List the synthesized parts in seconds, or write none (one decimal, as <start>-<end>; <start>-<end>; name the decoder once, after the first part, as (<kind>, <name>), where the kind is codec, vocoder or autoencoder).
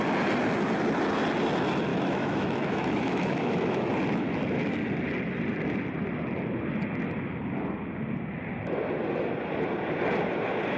1.9-3.9 (autoencoder, DAC-VAE)